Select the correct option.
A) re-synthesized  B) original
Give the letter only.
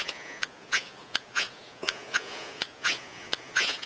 A